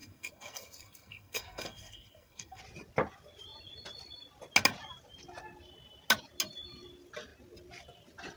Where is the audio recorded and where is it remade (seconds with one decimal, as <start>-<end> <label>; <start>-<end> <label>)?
0.0-2.6 remade; 2.6-8.4 recorded

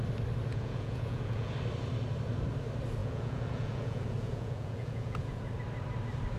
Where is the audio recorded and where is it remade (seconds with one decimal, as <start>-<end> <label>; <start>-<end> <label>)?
0.0-0.5 recorded; 0.5-1.5 remade; 1.5-3.0 recorded; 3.0-5.5 remade; 5.5-6.4 recorded

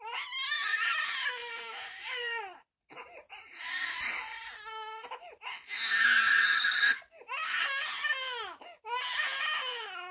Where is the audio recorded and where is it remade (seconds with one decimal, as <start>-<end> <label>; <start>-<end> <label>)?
0.0-1.4 recorded; 1.4-3.6 remade; 3.6-10.1 recorded

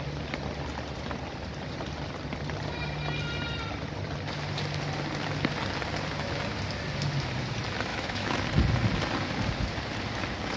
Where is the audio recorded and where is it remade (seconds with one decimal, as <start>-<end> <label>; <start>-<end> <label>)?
0.0-7.9 recorded; 7.9-8.4 remade; 8.4-10.6 recorded